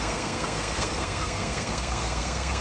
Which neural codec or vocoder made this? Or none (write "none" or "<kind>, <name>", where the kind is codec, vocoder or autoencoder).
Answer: codec, SNAC